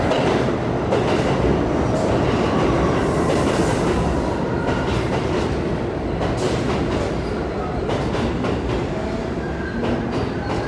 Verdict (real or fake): real